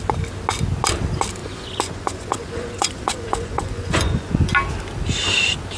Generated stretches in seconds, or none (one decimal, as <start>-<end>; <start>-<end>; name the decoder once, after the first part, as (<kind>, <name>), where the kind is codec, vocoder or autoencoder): 1.4-4.5 (vocoder, Vocos)